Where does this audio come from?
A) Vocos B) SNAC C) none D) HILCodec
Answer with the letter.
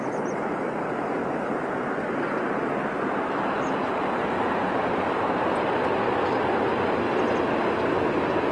C